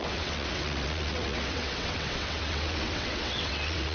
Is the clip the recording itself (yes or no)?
no